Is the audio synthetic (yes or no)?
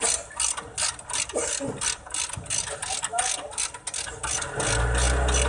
no